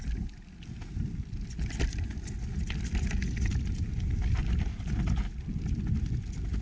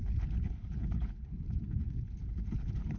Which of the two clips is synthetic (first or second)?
second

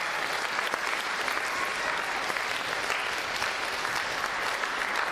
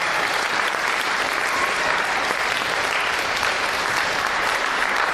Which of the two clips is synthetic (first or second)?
second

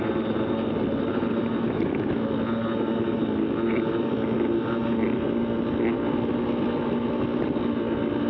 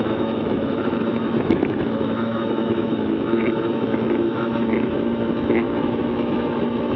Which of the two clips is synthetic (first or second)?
second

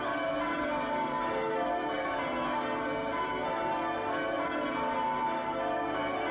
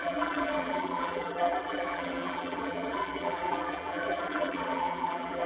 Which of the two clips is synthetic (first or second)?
second